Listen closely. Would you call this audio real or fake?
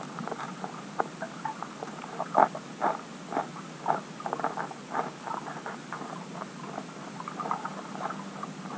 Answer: real